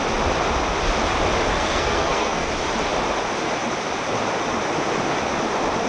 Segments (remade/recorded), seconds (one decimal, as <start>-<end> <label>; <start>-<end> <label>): 0.0-1.5 recorded; 1.5-2.5 remade; 2.5-5.9 recorded